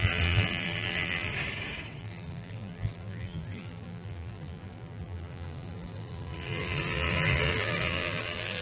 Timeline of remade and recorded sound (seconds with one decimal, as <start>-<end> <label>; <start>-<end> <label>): 0.0-1.3 remade; 1.3-2.0 recorded; 2.0-8.6 remade